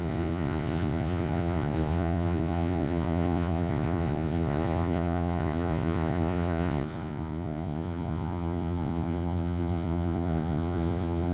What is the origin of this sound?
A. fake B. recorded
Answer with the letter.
A